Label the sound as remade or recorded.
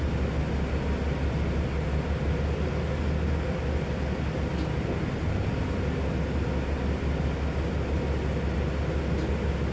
recorded